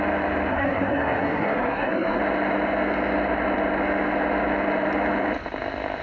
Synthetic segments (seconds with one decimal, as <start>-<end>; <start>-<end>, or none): 0.5-2.2